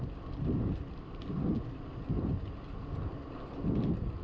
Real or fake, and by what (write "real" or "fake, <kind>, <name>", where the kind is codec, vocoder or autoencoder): real